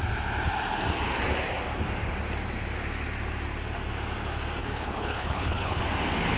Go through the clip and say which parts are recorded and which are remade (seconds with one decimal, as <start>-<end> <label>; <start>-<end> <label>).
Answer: 0.0-4.6 recorded; 4.6-5.8 remade; 5.8-6.4 recorded